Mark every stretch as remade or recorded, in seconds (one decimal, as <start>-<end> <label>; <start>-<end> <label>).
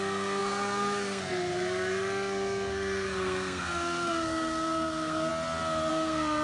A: 0.0-5.3 remade; 5.3-5.9 recorded; 5.9-6.4 remade